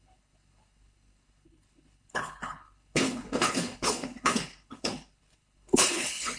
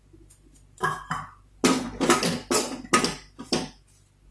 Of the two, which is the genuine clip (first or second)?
second